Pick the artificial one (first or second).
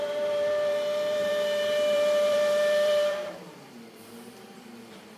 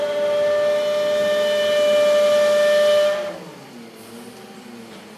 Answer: first